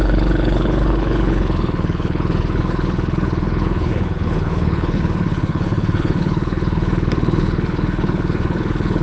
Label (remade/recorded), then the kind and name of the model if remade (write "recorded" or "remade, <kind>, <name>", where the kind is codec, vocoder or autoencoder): remade, codec, HILCodec